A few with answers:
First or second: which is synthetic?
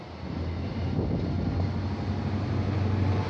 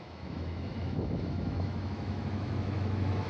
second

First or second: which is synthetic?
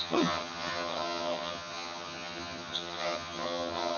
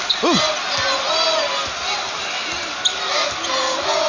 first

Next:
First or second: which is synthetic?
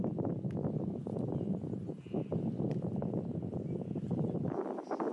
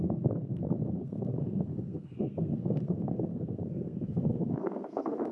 second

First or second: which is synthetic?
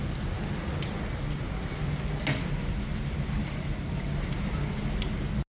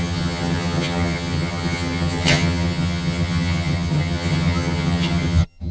second